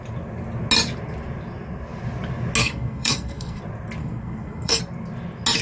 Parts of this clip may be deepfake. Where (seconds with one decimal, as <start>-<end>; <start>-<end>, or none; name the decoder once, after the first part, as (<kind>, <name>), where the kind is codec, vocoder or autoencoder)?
2.6-3.6 (codec, SNAC); 4.0-4.8